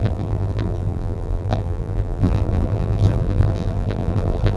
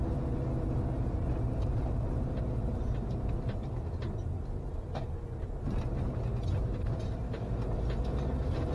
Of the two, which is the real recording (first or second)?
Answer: second